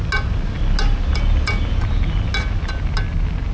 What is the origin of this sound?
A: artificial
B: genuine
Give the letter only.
B